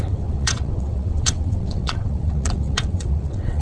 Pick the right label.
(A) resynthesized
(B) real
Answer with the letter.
A